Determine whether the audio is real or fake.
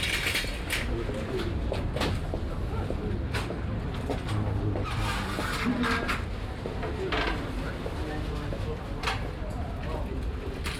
real